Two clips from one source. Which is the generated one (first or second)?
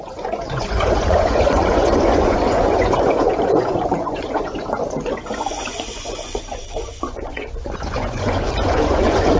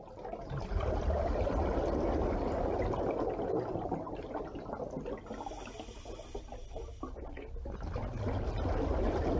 first